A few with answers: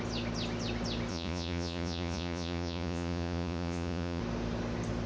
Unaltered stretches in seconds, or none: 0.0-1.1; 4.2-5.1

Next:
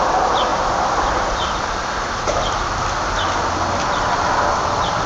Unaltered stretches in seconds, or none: 0.0-0.5; 2.7-5.1

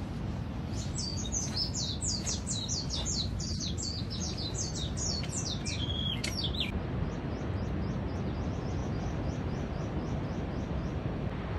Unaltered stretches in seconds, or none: 0.0-11.6

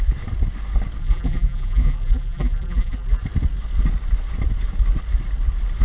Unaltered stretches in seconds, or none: 0.0-1.0; 3.2-5.8

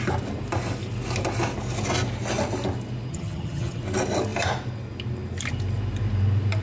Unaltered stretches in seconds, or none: 0.0-3.1; 3.8-6.6